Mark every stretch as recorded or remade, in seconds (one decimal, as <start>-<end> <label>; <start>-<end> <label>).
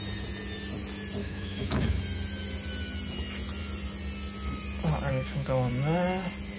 0.0-1.2 recorded; 1.2-2.0 remade; 2.0-5.1 recorded; 5.1-5.7 remade; 5.7-6.6 recorded